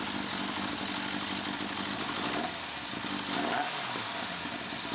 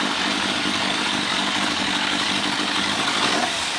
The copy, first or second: second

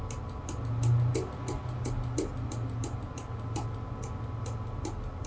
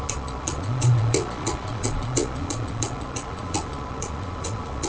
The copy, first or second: second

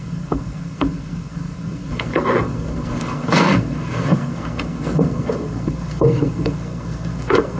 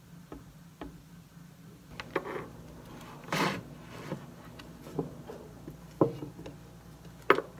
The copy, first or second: first